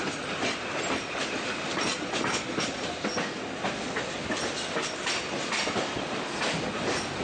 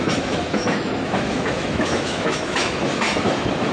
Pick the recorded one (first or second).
first